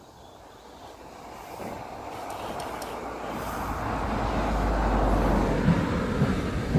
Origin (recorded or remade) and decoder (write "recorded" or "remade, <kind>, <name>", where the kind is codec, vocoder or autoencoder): recorded